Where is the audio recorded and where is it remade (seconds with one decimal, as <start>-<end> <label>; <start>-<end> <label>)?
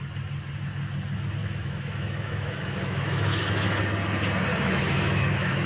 0.0-1.4 recorded; 1.4-3.8 remade; 3.8-4.5 recorded; 4.5-5.7 remade